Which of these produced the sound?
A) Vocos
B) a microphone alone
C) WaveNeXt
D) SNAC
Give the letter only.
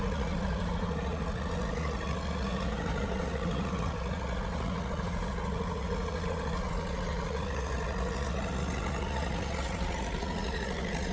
A